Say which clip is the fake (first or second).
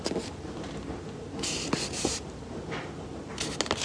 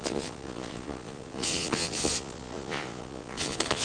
second